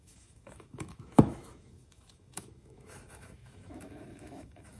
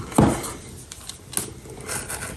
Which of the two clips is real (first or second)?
second